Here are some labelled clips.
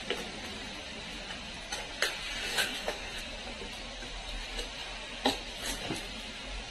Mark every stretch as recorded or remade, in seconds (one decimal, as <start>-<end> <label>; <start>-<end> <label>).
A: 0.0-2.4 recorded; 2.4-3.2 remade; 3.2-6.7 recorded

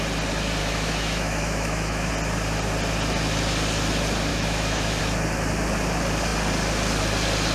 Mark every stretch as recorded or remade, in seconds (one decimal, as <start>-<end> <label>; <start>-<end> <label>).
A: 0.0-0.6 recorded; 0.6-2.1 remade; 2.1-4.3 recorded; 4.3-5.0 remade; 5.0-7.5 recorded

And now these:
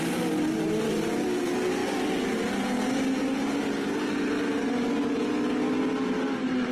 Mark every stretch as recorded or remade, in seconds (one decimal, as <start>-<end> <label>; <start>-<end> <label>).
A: 0.0-6.7 recorded

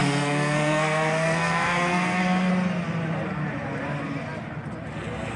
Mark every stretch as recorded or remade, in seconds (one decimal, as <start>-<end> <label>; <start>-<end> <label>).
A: 0.0-2.5 remade; 2.5-5.4 recorded

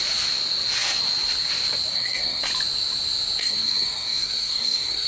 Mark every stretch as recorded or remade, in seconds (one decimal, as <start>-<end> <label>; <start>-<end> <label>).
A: 0.0-1.9 recorded; 1.9-2.4 remade; 2.4-3.4 recorded; 3.4-5.1 remade

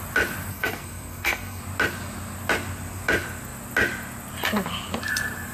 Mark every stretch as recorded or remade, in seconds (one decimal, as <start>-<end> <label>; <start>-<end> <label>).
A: 0.0-0.5 recorded; 0.5-1.6 remade; 1.6-5.5 recorded

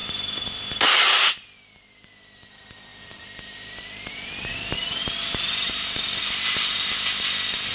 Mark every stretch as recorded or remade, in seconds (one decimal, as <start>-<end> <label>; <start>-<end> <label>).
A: 0.0-2.9 recorded; 2.9-6.9 remade; 6.9-7.7 recorded